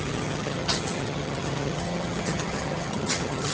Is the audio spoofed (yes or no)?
yes